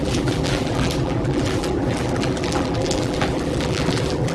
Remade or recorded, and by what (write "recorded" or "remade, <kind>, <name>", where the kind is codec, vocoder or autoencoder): remade, vocoder, BigVGAN v2